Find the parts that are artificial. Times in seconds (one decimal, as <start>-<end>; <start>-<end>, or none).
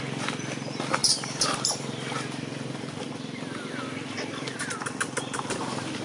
1.0-4.6